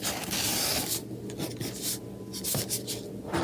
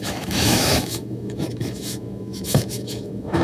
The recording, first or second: first